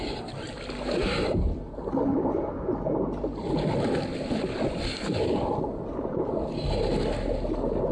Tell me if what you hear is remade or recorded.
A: recorded